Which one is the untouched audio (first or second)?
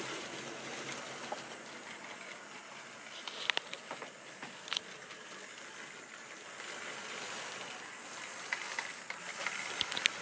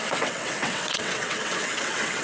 first